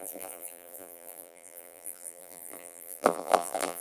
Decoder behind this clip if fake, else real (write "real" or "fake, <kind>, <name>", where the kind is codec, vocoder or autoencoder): fake, vocoder, BigVGAN v2